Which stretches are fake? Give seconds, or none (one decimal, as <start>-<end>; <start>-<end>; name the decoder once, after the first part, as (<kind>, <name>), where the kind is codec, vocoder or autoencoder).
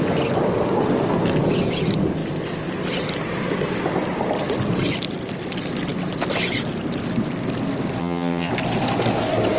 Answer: 8.0-8.5 (vocoder, HiFi-GAN)